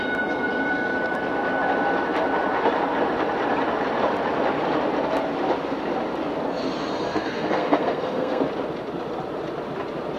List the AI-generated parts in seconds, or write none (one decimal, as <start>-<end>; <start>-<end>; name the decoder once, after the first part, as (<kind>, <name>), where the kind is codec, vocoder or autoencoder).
6.9-8.4 (codec, SNAC)